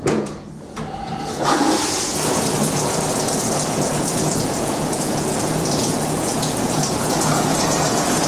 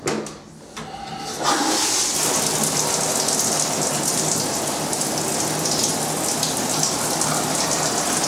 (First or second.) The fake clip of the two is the first